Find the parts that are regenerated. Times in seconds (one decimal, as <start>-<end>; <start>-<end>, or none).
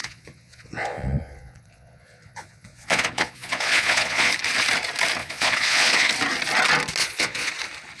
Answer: 0.0-4.3; 5.2-6.1; 7.0-7.5